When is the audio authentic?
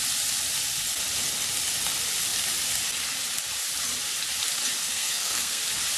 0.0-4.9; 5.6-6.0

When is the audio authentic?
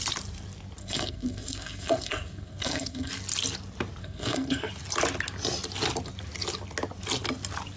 0.0-0.8; 3.1-4.0; 4.7-7.8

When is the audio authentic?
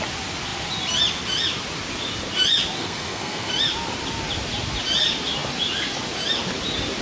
0.0-2.8; 3.5-7.0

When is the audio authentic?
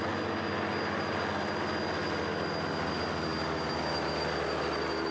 0.0-5.1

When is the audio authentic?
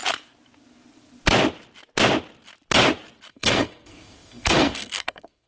0.0-3.3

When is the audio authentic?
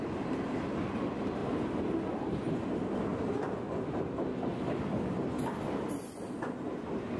0.0-7.2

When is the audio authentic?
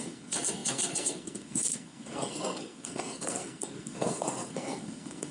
none